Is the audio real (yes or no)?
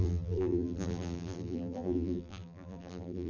no